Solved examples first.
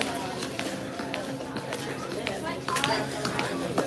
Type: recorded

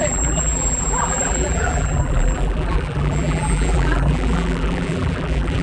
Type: remade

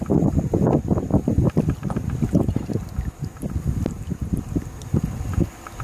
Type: recorded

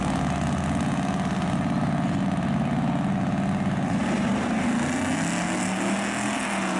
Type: recorded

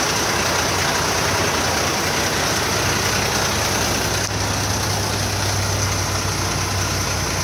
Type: recorded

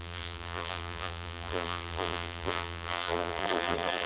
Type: remade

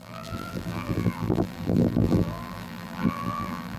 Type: remade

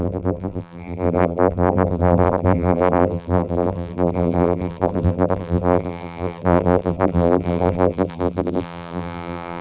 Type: remade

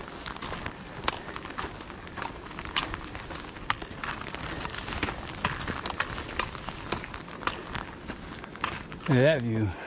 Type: recorded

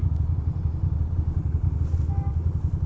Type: recorded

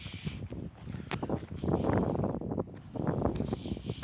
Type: recorded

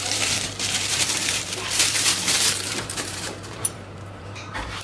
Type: remade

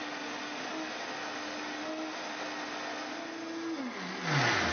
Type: recorded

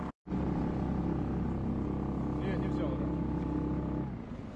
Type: recorded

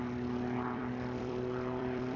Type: remade